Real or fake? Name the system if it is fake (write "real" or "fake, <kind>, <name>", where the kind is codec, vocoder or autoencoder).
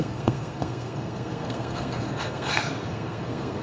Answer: fake, codec, SNAC